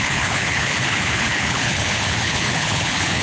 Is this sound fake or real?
fake